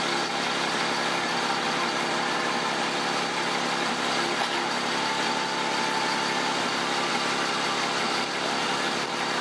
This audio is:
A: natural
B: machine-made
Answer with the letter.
A